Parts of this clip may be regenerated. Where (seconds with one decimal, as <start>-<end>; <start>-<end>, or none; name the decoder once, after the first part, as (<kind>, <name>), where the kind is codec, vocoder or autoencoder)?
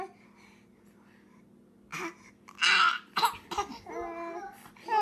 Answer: none